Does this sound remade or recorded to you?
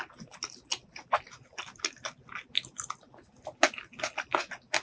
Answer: recorded